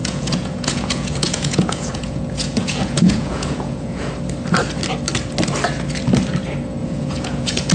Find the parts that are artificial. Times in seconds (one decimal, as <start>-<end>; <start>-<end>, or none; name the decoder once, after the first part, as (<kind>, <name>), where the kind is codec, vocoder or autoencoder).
0.0-4.1 (vocoder, Vocos); 6.8-7.7